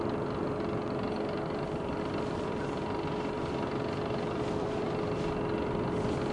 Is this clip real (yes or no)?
yes